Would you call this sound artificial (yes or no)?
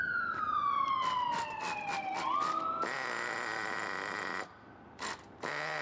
no